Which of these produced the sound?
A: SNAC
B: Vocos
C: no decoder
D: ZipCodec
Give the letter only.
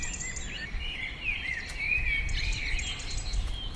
C